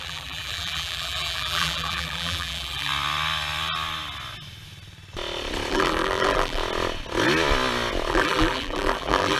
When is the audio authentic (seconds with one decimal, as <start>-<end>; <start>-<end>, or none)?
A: 2.9-5.7; 6.6-8.1